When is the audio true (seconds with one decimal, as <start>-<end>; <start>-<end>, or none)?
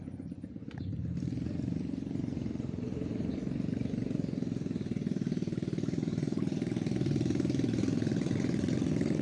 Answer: 3.1-5.1